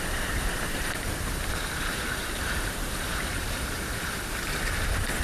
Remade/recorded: remade